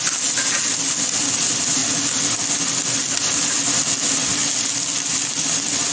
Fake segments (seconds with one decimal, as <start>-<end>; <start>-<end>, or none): none